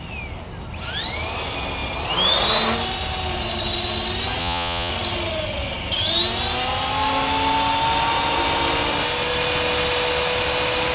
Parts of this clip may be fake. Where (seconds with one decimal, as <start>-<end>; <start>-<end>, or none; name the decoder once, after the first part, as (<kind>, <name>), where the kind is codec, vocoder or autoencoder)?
4.4-4.9 (vocoder, Vocos)